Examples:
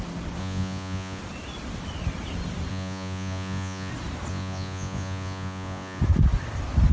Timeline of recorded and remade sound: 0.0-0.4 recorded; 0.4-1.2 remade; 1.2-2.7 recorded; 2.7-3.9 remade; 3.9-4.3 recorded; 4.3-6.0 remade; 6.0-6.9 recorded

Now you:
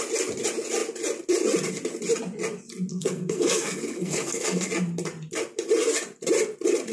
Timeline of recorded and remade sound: 0.0-2.9 recorded; 2.9-4.7 remade; 4.7-6.9 recorded

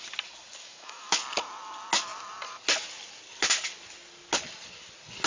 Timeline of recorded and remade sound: 0.0-0.6 recorded; 0.6-1.2 remade; 1.2-5.3 recorded

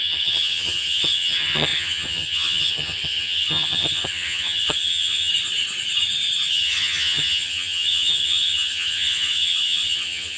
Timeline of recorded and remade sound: 0.0-5.3 remade; 5.3-6.5 recorded; 6.5-10.4 remade

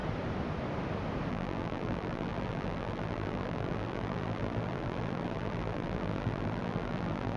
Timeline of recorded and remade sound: 0.0-1.3 recorded; 1.3-7.4 remade

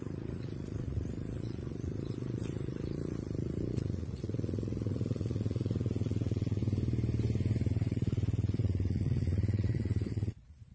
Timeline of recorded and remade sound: 0.0-6.6 remade; 6.6-7.7 recorded; 7.7-10.7 remade